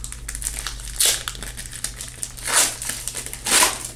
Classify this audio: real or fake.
real